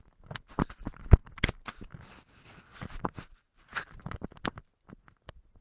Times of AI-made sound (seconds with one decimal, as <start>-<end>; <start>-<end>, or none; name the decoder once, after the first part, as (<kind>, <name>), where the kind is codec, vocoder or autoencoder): none